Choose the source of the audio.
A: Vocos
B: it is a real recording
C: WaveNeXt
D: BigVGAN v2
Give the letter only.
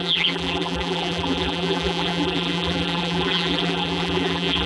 D